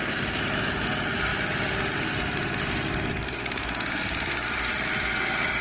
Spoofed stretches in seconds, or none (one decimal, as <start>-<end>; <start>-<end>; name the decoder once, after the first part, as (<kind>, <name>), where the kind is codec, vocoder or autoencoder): none